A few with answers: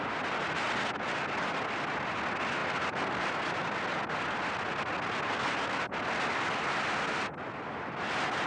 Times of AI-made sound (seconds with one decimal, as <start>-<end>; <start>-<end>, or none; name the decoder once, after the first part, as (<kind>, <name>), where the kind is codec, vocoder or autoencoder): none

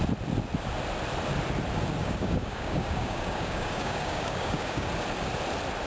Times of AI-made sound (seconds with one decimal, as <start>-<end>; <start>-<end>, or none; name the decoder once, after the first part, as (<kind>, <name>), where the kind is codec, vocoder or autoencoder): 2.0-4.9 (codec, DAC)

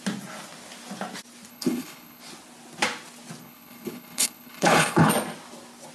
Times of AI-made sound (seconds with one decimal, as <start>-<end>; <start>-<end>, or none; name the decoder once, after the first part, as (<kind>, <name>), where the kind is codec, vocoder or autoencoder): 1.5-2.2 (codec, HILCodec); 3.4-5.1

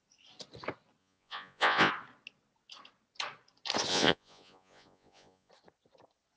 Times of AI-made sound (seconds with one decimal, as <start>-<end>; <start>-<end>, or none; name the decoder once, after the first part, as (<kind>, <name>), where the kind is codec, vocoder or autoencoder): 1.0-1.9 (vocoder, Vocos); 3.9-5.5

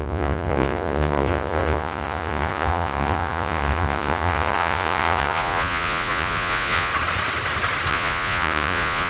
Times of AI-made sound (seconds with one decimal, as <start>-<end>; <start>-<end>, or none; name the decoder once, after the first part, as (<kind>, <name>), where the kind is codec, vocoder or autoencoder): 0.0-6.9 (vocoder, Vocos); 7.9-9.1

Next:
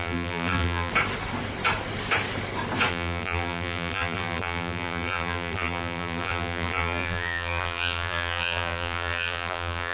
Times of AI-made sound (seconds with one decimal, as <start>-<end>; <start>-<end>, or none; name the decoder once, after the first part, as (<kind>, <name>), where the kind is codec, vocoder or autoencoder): 0.0-0.9 (vocoder, BigVGAN v2); 2.9-9.9